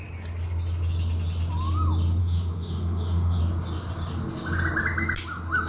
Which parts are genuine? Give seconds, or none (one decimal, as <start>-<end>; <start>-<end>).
0.0-2.2; 3.4-5.7